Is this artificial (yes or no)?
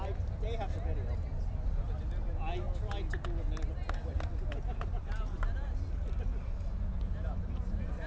no